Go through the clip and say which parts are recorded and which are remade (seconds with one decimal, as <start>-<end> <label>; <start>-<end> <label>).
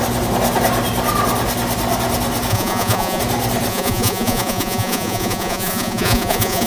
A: 0.0-2.5 recorded; 2.5-3.2 remade; 3.2-3.7 recorded; 3.7-6.7 remade